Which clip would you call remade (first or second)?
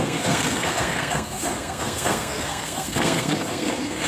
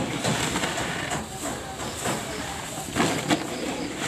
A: first